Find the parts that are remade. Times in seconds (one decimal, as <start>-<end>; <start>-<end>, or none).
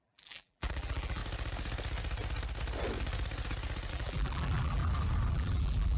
0.0-1.2; 3.9-4.8; 5.3-6.0